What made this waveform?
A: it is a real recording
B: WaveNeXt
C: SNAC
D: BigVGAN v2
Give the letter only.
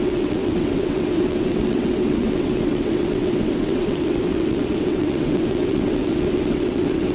B